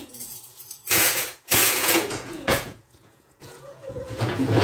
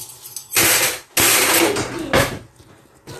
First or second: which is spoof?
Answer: first